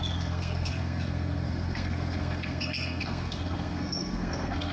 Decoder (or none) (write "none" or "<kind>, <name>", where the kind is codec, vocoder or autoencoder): codec, SNAC